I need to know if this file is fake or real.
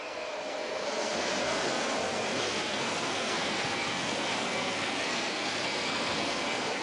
fake